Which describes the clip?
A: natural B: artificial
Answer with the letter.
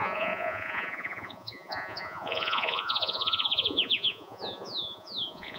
B